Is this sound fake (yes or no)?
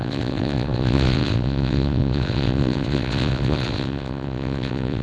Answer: yes